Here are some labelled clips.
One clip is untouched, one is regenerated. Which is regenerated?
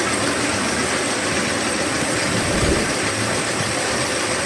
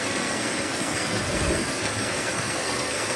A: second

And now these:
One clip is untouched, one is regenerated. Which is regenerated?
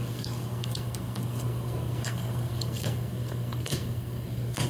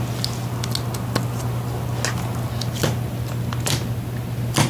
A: first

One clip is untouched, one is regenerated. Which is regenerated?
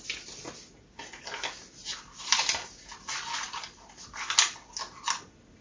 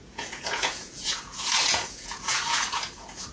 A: second